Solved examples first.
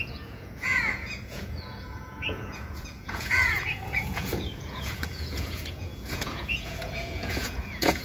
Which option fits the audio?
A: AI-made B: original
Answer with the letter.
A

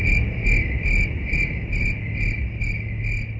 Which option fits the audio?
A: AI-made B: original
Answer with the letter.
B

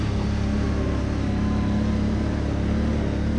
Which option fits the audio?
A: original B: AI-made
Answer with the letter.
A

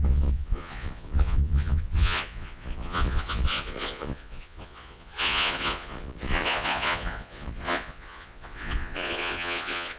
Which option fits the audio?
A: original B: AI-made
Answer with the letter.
B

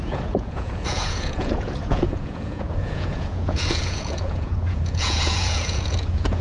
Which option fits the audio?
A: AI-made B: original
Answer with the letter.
A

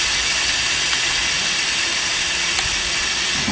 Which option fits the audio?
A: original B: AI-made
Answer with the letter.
A